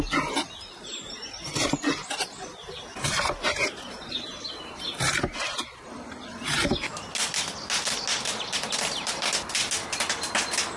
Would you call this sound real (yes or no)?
yes